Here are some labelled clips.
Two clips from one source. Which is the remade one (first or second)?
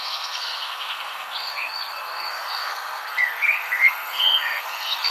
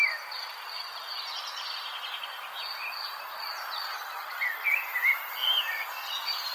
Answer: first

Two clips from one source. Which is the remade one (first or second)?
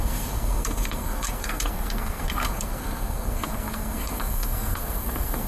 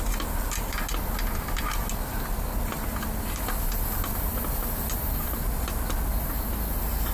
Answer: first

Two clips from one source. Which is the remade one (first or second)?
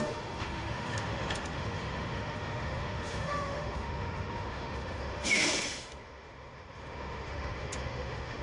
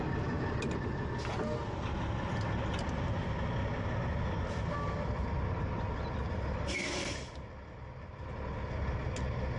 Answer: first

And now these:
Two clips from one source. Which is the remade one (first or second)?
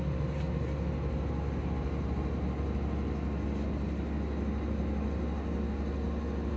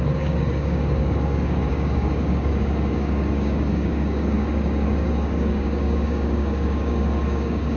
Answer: second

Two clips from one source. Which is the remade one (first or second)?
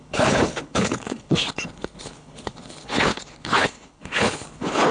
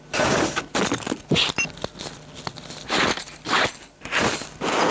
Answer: first